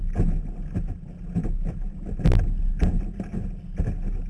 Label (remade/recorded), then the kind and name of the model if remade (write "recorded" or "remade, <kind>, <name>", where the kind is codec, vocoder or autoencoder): recorded